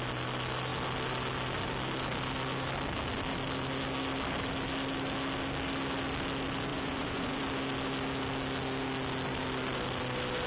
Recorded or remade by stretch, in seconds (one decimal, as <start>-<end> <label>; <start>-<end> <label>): 0.0-6.7 recorded; 6.7-7.4 remade; 7.4-10.5 recorded